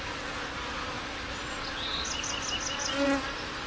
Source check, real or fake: real